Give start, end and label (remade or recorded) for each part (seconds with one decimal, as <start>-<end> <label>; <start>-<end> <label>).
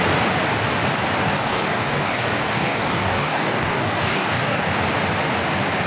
0.0-1.2 recorded; 1.2-4.7 remade; 4.7-5.9 recorded